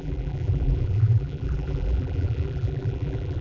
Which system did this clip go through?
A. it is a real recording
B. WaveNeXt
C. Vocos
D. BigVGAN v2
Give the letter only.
D